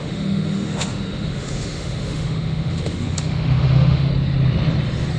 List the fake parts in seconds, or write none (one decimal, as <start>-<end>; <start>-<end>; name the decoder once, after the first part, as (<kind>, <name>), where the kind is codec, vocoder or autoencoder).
0.0-4.1 (autoencoder, DAC-VAE)